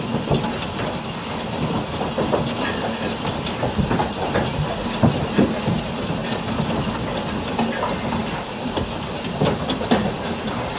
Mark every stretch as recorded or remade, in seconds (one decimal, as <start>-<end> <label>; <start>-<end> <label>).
0.0-6.2 recorded; 6.2-7.7 remade; 7.7-10.8 recorded

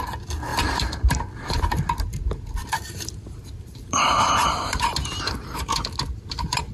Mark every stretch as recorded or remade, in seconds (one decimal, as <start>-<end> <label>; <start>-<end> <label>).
0.0-0.5 recorded; 0.5-1.6 remade; 1.6-2.6 recorded; 2.6-5.7 remade; 5.7-6.7 recorded

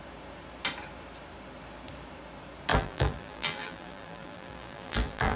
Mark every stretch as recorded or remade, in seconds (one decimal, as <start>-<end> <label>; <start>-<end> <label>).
0.0-2.7 recorded; 2.7-5.4 remade

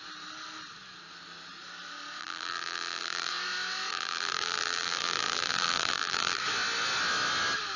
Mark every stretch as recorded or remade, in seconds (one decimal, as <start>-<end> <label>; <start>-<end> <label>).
0.0-2.2 recorded; 2.2-3.3 remade; 3.3-3.9 recorded; 3.9-6.4 remade; 6.4-7.8 recorded

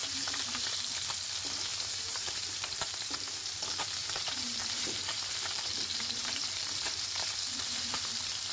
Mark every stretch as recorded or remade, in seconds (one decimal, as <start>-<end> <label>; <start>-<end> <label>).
0.0-0.9 remade; 0.9-1.7 recorded; 1.7-3.1 remade; 3.1-4.0 recorded; 4.0-8.0 remade; 8.0-8.5 recorded

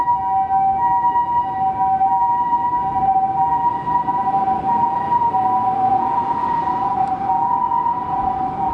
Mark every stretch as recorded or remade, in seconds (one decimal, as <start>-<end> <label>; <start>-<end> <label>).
0.0-4.2 recorded; 4.2-5.4 remade; 5.4-8.7 recorded

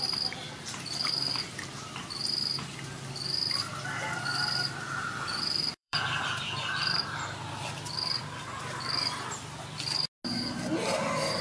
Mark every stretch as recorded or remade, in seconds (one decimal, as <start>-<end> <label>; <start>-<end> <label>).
0.0-0.4 recorded; 0.4-1.7 remade; 1.7-5.3 recorded; 5.3-8.6 remade; 8.6-11.4 recorded